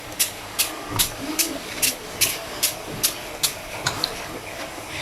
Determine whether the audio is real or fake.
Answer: fake